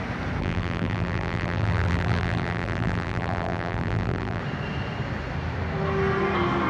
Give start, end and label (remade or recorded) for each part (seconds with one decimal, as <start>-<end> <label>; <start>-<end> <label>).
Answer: 0.0-0.4 recorded; 0.4-4.4 remade; 4.4-6.7 recorded